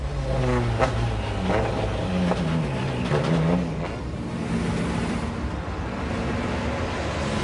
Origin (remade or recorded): recorded